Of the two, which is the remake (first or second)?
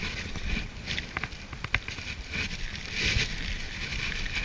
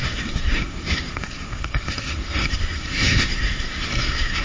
second